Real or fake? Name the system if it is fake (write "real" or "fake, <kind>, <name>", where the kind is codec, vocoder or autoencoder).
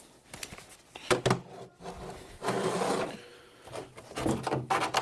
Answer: real